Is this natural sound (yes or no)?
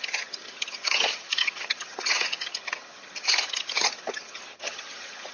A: no